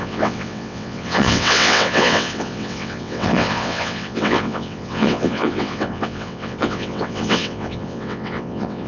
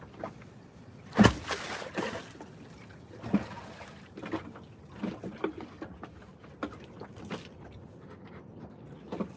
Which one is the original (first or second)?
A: second